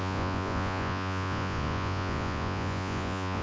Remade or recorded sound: remade